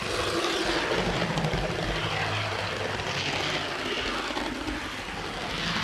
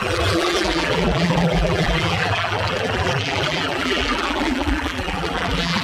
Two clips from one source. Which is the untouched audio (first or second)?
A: first